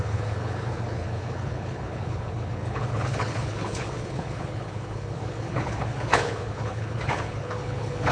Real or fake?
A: fake